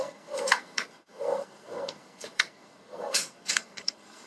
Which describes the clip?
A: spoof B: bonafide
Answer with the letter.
A